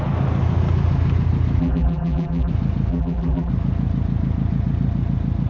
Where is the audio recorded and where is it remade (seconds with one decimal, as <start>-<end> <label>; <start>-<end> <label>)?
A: 0.0-1.6 recorded; 1.6-2.5 remade; 2.5-2.9 recorded; 2.9-3.5 remade; 3.5-5.5 recorded